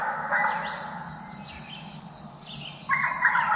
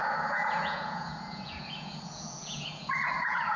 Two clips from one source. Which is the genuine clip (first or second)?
first